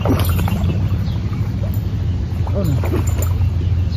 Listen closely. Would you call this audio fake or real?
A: real